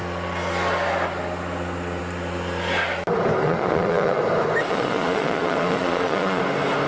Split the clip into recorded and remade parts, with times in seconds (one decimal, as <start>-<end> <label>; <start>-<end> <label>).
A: 0.0-3.4 recorded; 3.4-4.2 remade; 4.2-4.7 recorded; 4.7-6.4 remade; 6.4-6.9 recorded